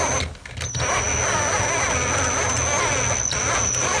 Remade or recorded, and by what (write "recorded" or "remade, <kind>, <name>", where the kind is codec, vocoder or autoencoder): recorded